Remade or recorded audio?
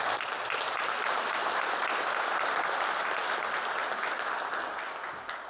remade